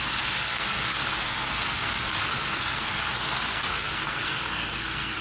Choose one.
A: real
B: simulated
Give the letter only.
B